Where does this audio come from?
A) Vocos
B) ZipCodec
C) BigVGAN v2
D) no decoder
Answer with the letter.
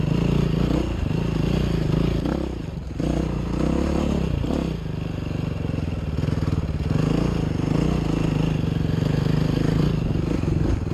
D